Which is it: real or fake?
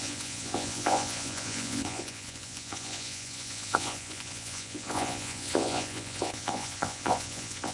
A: fake